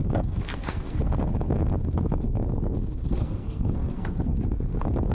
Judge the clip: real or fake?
fake